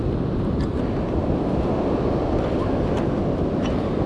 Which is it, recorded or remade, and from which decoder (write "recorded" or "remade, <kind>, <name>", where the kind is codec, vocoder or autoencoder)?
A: recorded